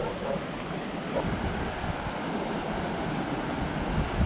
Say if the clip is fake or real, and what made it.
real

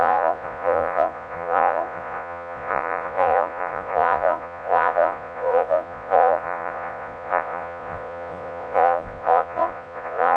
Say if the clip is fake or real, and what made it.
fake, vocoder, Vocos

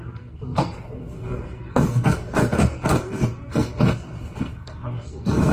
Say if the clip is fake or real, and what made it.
fake, codec, SNAC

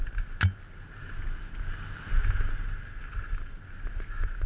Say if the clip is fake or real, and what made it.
real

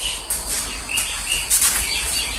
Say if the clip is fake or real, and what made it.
fake, vocoder, BigVGAN v2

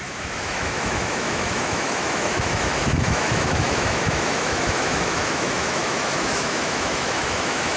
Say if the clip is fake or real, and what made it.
fake, autoencoder, DAC-VAE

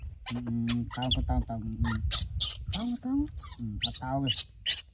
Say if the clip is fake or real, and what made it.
real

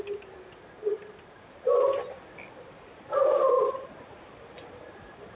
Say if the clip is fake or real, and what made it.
real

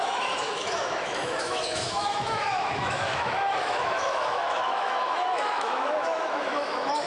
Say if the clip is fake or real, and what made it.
fake, autoencoder, DAC-VAE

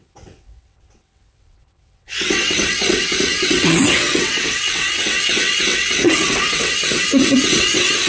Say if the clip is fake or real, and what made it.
fake, vocoder, WaveNeXt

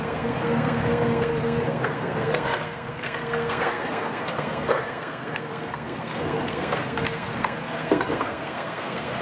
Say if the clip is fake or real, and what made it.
fake, codec, SNAC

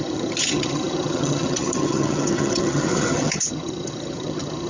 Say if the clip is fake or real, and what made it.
fake, vocoder, HiFi-GAN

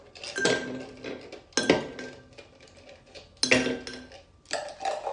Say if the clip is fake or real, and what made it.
real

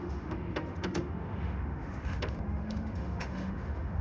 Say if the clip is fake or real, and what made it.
fake, autoencoder, DAC-VAE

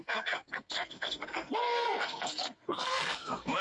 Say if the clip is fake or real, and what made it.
fake, codec, SNAC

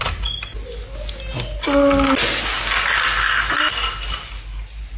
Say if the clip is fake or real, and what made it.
real